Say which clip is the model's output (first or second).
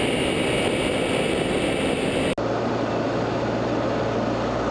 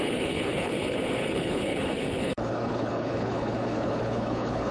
second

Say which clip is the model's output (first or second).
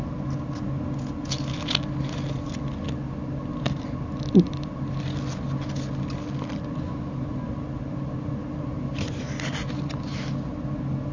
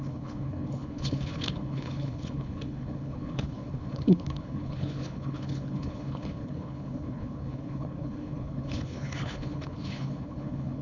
second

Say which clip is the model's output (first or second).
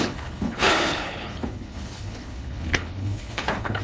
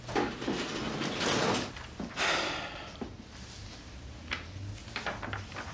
first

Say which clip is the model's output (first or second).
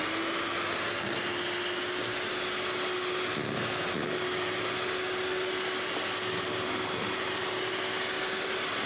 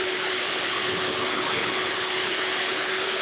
second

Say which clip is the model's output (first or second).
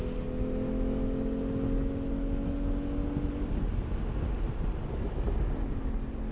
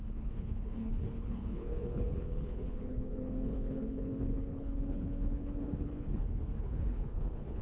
second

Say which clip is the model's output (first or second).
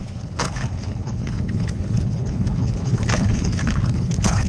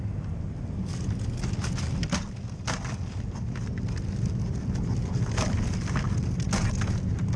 first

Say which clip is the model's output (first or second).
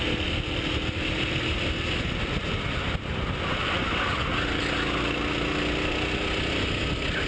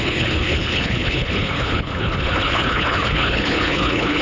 second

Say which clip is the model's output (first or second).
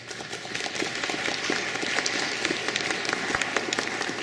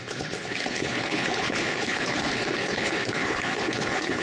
second